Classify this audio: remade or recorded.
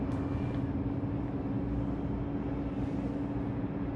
recorded